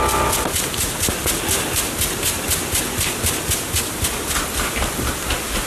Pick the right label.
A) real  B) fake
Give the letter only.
A